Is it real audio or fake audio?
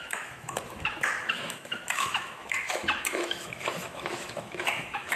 fake